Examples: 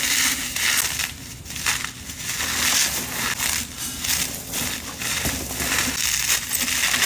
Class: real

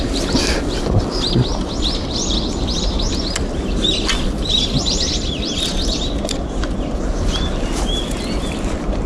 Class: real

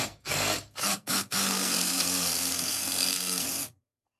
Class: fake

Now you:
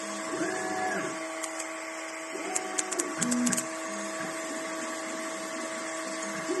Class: real